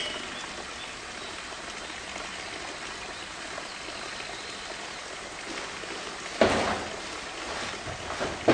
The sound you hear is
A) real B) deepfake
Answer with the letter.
A